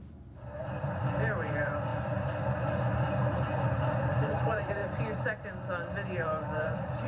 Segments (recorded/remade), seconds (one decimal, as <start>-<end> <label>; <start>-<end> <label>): 0.0-1.9 remade; 1.9-2.7 recorded; 2.7-4.8 remade; 4.8-6.6 recorded; 6.6-7.1 remade